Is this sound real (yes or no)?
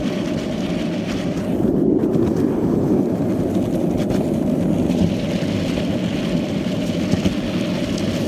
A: yes